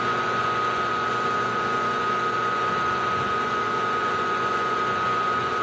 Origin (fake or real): fake